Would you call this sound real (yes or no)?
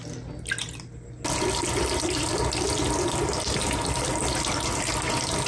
yes